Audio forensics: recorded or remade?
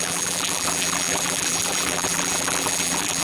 remade